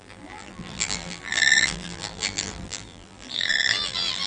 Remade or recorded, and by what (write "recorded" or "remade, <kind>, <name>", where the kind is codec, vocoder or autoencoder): remade, vocoder, BigVGAN v2